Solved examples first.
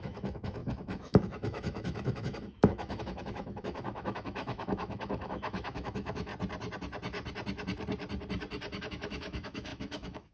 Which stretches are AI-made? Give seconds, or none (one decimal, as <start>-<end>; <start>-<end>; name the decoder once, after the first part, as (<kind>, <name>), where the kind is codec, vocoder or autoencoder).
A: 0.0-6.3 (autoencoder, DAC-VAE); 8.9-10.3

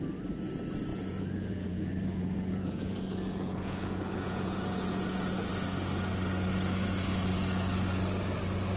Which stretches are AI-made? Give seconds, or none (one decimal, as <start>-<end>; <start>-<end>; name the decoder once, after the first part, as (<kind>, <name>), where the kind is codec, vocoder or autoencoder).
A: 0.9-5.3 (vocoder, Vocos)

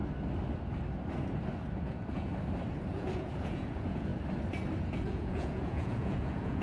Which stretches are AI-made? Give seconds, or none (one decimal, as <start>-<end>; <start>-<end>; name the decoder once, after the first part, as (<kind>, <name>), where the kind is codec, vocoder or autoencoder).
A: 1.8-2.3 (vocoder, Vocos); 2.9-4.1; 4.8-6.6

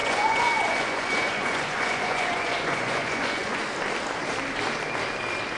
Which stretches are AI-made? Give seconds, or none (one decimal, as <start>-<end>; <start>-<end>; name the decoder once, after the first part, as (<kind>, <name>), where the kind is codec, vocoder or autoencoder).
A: 0.0-3.6 (vocoder, Vocos)

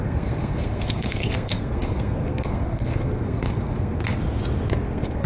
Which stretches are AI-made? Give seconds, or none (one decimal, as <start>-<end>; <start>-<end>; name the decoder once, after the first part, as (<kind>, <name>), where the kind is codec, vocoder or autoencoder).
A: 0.0-4.0 (codec, SNAC); 4.7-5.3

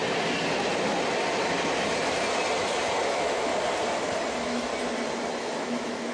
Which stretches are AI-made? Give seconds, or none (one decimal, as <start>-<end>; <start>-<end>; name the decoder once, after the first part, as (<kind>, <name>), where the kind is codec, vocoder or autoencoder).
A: 3.1-3.5 (autoencoder, DAC-VAE); 4.3-4.7; 5.4-6.1

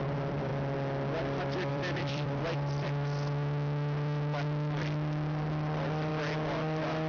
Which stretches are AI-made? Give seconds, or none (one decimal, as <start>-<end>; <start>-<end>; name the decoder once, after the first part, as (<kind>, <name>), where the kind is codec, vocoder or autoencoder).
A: 0.0-0.5 (vocoder, BigVGAN v2); 1.7-6.1

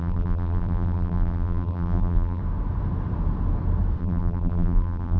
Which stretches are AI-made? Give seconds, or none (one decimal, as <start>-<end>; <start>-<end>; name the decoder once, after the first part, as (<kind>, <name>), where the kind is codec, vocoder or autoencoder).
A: 0.0-2.4 (vocoder, BigVGAN v2); 4.0-5.2